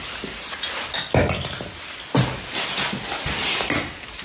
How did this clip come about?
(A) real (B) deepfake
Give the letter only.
A